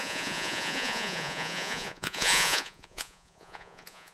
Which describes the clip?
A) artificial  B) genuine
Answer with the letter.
A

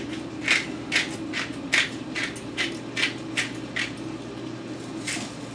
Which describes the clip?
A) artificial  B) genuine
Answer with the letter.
B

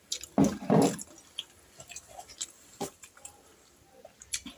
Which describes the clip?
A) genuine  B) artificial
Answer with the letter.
A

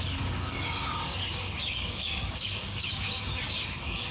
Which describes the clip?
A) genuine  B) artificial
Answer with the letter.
B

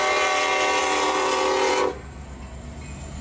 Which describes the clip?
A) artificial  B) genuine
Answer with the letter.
A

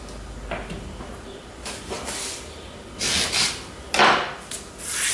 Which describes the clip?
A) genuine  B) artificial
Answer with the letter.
A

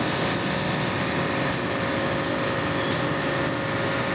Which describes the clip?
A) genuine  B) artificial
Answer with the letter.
A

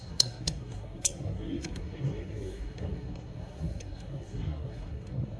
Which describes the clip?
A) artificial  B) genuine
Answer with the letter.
A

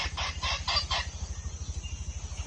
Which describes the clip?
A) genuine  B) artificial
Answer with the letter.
A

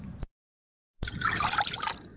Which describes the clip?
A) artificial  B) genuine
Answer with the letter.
B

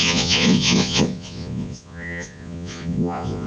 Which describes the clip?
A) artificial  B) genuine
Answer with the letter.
A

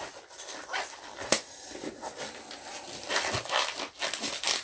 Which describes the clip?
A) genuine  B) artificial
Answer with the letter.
A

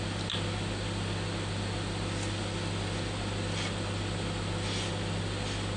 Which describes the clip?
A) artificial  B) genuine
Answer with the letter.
B